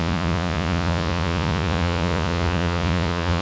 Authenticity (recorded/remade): remade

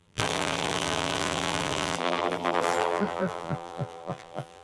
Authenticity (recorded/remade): remade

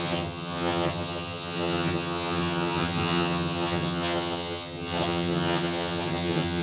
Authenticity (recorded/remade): remade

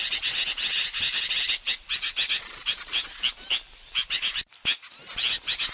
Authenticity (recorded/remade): recorded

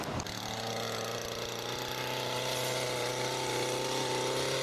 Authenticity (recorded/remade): recorded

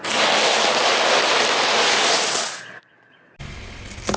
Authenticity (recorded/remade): recorded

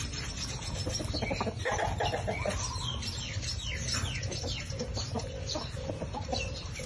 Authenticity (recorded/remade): recorded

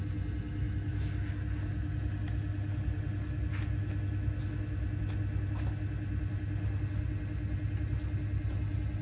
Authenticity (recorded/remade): recorded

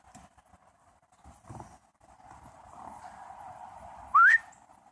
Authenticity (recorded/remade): remade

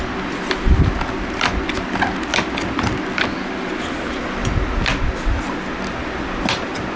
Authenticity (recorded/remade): recorded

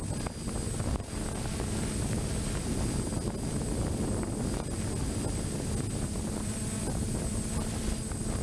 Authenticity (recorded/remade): recorded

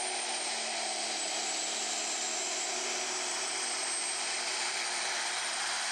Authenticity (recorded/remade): recorded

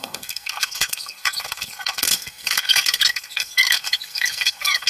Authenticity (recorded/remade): remade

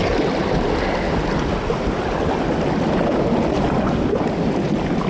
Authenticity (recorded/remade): recorded